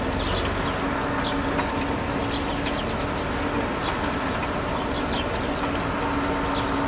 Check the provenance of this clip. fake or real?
real